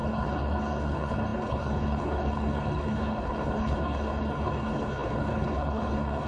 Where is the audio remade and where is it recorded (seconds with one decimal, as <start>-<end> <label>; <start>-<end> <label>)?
0.0-6.3 remade